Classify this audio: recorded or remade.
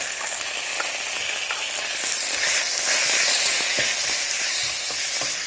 recorded